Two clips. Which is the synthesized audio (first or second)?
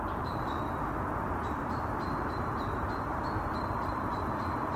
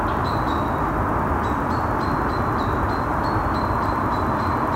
first